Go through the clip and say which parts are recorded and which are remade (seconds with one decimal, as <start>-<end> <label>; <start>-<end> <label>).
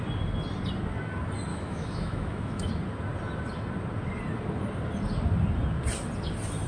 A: 0.0-1.5 recorded; 1.5-2.7 remade; 2.7-6.7 recorded